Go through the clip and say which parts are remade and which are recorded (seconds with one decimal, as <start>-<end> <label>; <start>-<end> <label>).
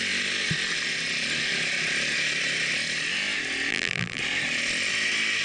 0.0-3.7 recorded; 3.7-4.2 remade; 4.2-5.4 recorded